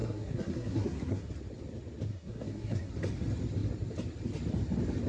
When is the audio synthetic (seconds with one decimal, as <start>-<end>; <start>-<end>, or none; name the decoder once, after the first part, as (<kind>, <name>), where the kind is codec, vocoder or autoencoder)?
0.0-1.3 (codec, SNAC); 2.1-2.9